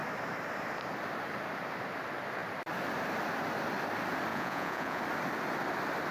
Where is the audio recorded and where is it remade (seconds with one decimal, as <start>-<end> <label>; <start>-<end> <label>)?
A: 0.0-4.3 recorded; 4.3-5.0 remade; 5.0-6.1 recorded